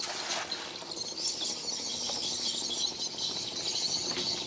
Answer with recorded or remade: recorded